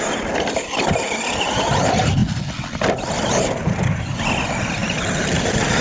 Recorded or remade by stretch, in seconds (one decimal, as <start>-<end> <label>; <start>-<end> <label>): 0.0-4.8 recorded; 4.8-5.8 remade